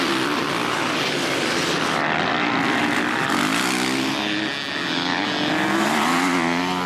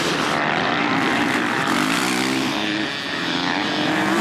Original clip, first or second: first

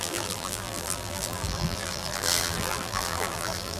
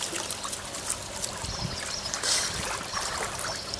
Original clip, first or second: second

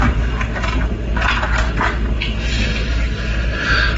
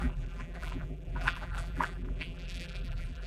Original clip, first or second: first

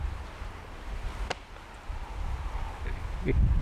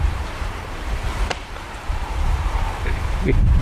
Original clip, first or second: first